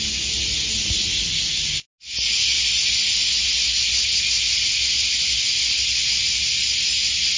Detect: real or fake real